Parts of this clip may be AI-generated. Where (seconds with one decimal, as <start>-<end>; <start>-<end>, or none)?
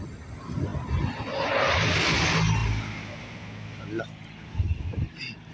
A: none